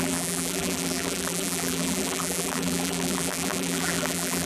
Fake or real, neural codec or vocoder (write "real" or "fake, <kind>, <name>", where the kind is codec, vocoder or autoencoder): fake, vocoder, BigVGAN v2